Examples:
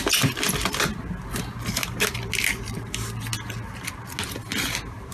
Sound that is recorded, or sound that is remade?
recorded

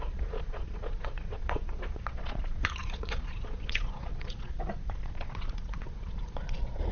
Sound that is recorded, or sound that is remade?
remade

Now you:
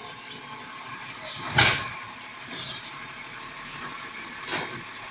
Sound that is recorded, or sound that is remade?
recorded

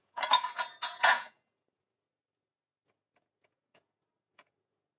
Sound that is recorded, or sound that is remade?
remade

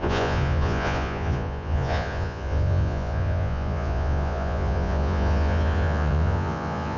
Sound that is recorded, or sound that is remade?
remade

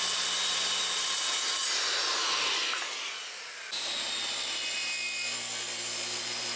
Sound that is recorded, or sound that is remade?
recorded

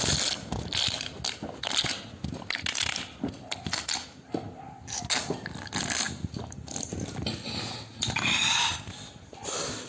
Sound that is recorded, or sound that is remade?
recorded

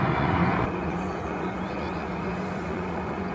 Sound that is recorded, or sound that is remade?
remade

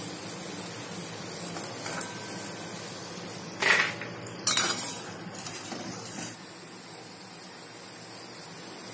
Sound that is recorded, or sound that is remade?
recorded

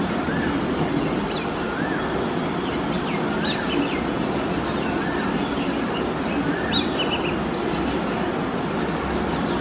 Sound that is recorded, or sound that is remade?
recorded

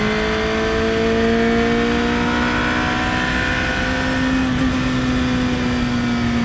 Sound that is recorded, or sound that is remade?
recorded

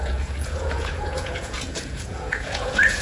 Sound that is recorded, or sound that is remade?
remade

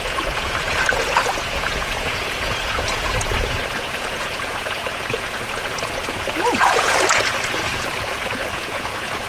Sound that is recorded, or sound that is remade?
remade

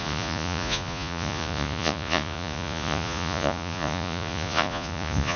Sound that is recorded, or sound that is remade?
remade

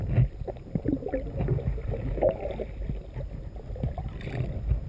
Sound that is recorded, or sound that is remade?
recorded